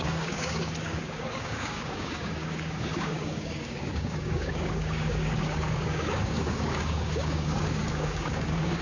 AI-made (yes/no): yes